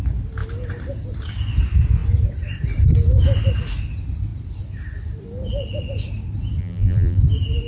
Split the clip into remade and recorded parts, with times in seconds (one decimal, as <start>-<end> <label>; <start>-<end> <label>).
0.0-6.6 recorded; 6.6-7.2 remade; 7.2-7.7 recorded